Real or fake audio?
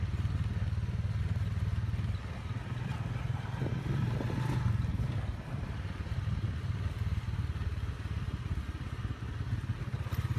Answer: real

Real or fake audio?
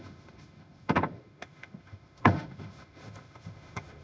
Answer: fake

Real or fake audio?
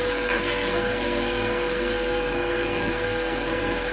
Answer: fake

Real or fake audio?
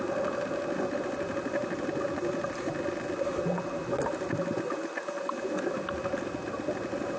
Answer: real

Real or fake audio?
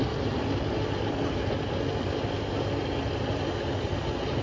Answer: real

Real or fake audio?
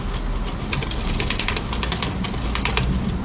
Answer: real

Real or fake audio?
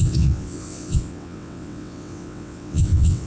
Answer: fake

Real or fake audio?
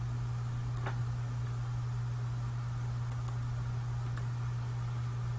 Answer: real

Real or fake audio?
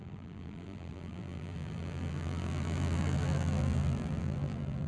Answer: fake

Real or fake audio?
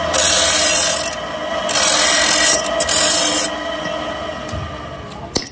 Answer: real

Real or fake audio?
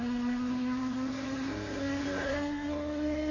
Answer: fake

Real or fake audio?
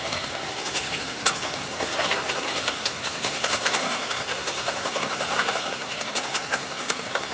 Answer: fake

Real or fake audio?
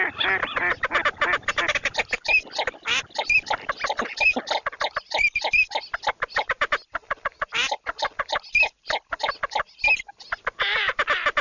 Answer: real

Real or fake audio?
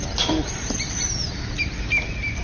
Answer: real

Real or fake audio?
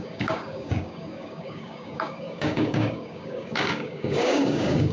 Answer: fake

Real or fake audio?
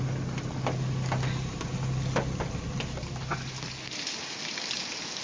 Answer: real